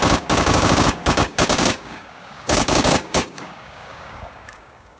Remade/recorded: remade